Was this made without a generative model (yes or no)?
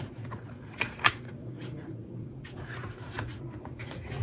no